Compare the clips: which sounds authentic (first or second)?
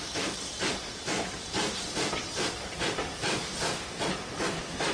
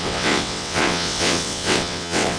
first